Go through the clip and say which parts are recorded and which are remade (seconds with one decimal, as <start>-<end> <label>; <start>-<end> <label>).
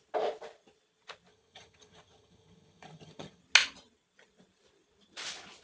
0.0-1.3 recorded; 1.3-3.4 remade; 3.4-5.6 recorded